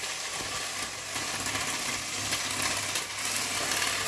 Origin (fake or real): real